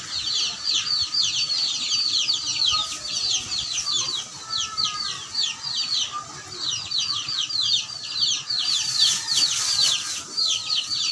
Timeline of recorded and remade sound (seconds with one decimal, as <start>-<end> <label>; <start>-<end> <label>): 0.0-11.1 recorded